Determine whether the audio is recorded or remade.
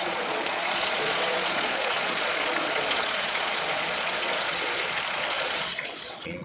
remade